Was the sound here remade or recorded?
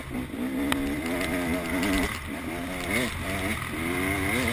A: recorded